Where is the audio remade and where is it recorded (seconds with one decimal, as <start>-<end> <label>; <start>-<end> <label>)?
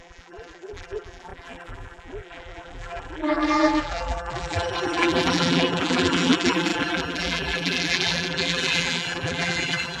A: 0.0-10.0 remade